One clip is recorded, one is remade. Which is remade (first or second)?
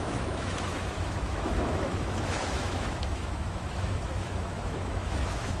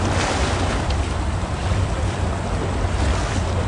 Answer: first